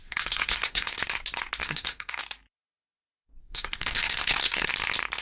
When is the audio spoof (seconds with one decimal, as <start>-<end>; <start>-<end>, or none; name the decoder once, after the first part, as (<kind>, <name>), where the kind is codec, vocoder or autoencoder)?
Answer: 0.0-1.0 (codec, SNAC); 1.6-2.2; 3.4-4.7